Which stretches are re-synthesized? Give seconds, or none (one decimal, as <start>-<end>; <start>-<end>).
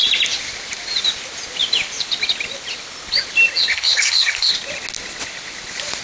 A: 3.7-4.5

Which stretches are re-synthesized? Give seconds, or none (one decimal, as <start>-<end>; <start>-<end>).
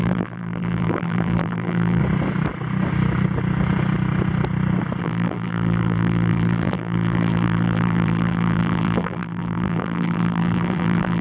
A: 0.0-2.0; 5.0-11.2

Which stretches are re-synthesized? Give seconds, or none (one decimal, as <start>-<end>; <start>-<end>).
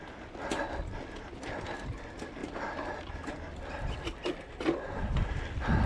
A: none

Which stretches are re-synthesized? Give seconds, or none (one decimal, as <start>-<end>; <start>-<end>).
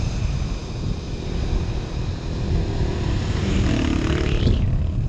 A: none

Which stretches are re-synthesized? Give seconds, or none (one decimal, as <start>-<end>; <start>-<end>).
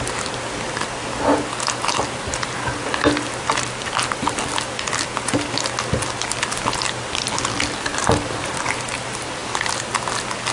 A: 7.9-8.9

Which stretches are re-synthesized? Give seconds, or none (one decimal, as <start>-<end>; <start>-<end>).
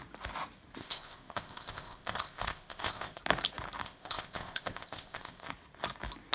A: 0.8-3.2; 3.8-5.5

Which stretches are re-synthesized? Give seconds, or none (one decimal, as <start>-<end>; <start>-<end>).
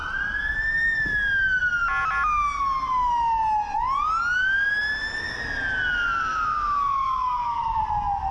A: 6.3-7.8